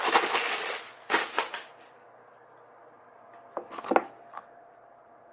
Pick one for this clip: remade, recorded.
recorded